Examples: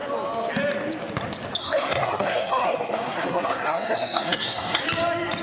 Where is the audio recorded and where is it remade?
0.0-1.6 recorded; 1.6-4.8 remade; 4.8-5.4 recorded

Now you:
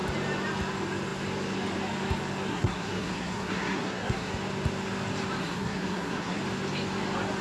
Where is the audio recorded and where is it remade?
0.0-2.5 recorded; 2.5-4.3 remade; 4.3-5.4 recorded; 5.4-6.4 remade; 6.4-7.4 recorded